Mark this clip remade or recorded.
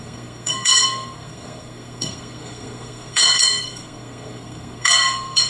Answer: remade